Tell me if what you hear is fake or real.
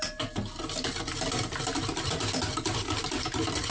real